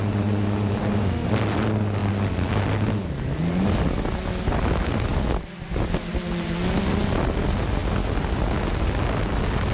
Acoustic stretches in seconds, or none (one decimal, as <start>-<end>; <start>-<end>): 0.0-9.7